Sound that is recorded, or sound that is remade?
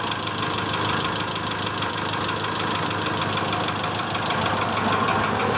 recorded